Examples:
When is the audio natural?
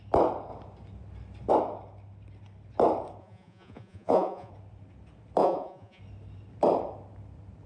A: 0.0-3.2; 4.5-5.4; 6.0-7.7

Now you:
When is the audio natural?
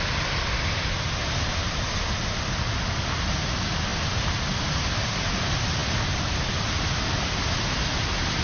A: 0.0-8.4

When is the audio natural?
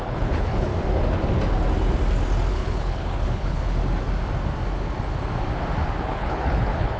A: 0.7-2.5; 3.8-6.0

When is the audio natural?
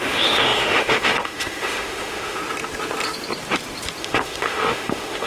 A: 2.4-4.0